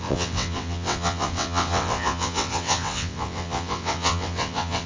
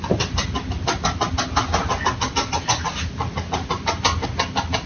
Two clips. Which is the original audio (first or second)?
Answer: second